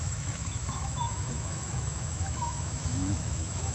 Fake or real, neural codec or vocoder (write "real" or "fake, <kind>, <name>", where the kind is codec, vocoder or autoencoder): fake, autoencoder, DAC-VAE